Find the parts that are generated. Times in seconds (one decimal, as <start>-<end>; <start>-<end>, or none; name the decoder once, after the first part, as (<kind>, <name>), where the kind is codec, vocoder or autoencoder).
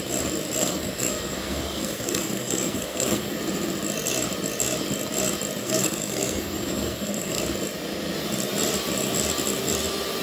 0.6-3.4 (codec, SNAC); 5.6-7.4